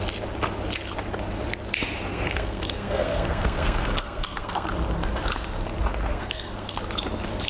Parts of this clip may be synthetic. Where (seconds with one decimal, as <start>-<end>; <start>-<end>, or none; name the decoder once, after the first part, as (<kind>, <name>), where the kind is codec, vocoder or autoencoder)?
2.1-4.7 (codec, SNAC); 5.9-6.8